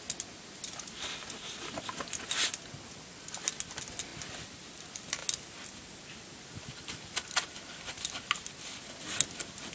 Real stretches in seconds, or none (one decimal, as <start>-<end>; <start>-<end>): 0.0-9.7